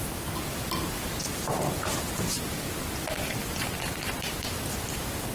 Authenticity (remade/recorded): recorded